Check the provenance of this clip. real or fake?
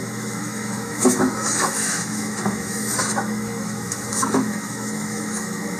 fake